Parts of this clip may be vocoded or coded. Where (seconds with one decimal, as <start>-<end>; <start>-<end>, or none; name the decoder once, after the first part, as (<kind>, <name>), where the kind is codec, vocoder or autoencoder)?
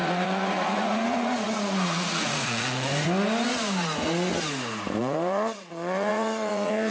0.0-2.9 (vocoder, Vocos); 5.0-6.9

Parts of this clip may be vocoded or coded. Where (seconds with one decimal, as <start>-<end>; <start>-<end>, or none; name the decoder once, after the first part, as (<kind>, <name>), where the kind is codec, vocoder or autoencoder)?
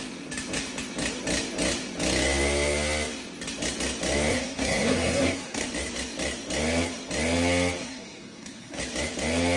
4.3-5.7 (codec, SNAC); 7.8-8.8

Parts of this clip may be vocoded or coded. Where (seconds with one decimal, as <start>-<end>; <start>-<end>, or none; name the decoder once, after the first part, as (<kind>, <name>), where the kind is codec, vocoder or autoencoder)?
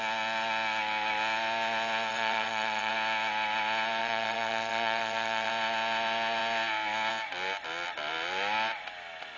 2.1-2.9 (vocoder, WaveNeXt); 4.0-5.5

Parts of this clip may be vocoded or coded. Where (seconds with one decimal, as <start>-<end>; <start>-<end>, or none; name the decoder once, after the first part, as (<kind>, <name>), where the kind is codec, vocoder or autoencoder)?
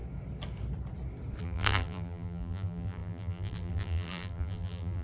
1.4-5.0 (vocoder, BigVGAN v2)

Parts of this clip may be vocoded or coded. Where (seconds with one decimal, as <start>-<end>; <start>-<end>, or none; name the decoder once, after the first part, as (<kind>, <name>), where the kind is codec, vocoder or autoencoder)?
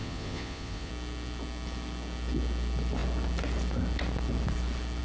0.0-0.9 (vocoder, Vocos)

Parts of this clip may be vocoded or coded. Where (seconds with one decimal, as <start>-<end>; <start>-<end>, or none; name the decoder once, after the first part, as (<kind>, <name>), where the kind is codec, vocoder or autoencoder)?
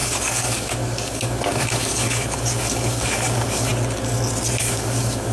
0.0-3.7 (codec, DAC); 4.6-5.3